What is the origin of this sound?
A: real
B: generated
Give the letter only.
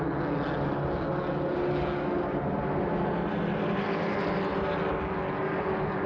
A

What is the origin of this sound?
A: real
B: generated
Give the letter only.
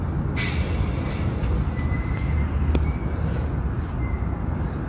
A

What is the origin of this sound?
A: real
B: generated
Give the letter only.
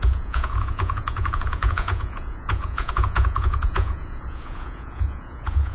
B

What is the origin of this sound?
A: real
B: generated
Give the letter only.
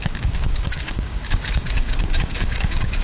B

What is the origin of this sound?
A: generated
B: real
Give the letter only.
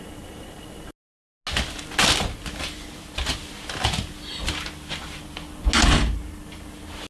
B